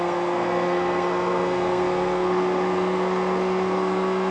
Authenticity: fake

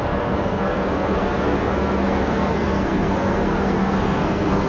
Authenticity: fake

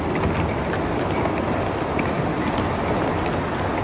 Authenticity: real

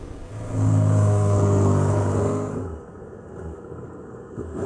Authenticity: fake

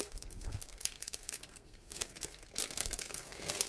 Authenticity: fake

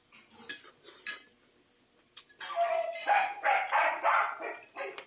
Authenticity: real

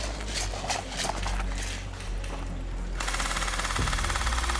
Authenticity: real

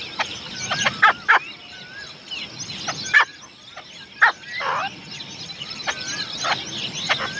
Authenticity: real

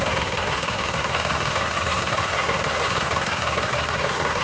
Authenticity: fake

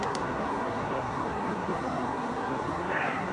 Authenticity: fake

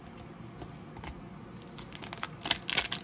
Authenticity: real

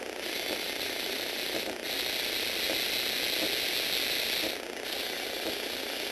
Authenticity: real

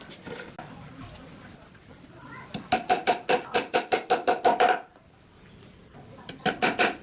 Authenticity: real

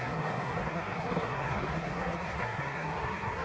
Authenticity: fake